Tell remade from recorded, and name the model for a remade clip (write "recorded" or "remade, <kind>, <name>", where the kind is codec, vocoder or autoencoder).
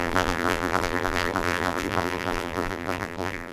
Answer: remade, vocoder, BigVGAN v2